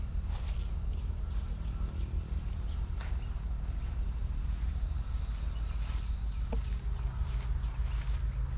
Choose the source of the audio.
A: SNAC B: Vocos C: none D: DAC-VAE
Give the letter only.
C